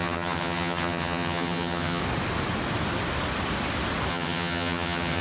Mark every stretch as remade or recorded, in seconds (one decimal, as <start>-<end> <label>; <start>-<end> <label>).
0.0-2.0 remade; 2.0-4.1 recorded; 4.1-5.2 remade